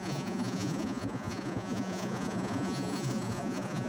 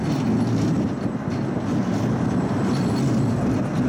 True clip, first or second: second